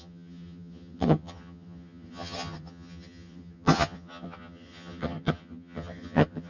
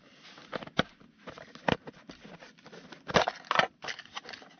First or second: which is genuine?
second